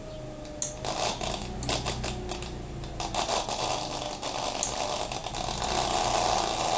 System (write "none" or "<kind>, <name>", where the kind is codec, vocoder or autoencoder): none